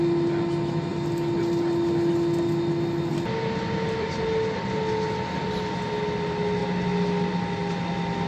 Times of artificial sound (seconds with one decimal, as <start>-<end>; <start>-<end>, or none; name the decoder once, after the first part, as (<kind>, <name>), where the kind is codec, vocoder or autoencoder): none